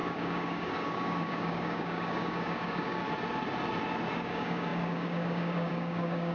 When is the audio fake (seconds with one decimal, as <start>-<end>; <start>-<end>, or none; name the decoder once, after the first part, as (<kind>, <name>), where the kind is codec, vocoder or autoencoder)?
0.0-3.0 (codec, DAC); 4.1-6.3

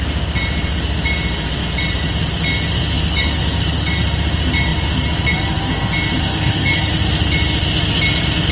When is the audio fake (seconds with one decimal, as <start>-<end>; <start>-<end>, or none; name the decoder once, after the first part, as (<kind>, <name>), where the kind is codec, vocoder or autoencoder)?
3.0-3.9 (codec, DAC); 6.3-6.9

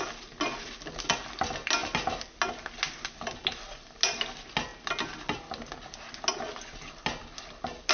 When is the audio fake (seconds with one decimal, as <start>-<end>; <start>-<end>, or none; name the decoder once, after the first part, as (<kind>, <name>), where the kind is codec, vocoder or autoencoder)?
none

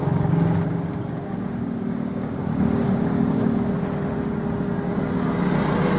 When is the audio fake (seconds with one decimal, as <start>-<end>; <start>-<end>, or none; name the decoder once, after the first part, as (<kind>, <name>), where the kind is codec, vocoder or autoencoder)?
0.0-3.6 (codec, DAC)